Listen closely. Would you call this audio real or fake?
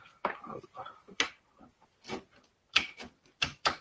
fake